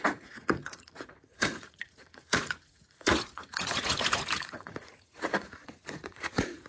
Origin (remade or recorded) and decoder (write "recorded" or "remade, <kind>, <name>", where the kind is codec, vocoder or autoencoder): remade, vocoder, Vocos